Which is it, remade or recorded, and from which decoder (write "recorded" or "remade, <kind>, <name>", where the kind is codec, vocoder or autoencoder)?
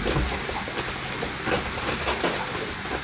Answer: recorded